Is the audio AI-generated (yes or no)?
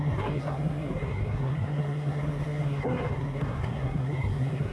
yes